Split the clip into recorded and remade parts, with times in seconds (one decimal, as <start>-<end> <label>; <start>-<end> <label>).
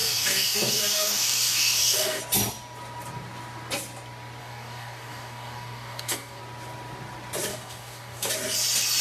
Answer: 0.0-2.2 remade; 2.2-4.4 recorded; 4.4-6.4 remade; 6.4-7.5 recorded; 7.5-8.3 remade; 8.3-9.0 recorded